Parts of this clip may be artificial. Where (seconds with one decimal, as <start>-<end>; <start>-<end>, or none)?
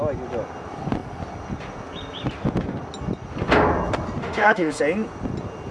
4.2-4.8